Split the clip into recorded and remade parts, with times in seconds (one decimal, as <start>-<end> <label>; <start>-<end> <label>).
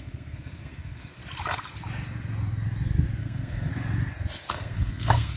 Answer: 0.0-1.2 remade; 1.2-3.2 recorded; 3.2-3.7 remade; 3.7-4.5 recorded; 4.5-5.4 remade